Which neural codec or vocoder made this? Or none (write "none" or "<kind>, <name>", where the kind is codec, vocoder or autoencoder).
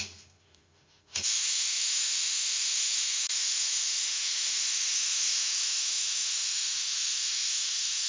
autoencoder, DAC-VAE